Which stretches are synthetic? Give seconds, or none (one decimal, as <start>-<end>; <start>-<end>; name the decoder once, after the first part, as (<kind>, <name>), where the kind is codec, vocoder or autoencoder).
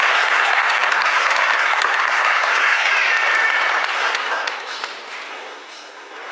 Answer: 0.0-2.9 (codec, SNAC); 3.9-4.8; 5.3-6.3